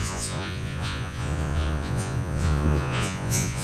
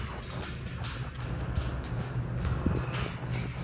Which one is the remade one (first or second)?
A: first